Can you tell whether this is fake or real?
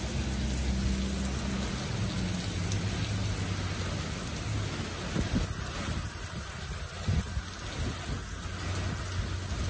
real